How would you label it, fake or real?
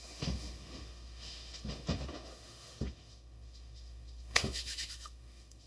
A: fake